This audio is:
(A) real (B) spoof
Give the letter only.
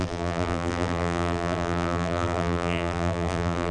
B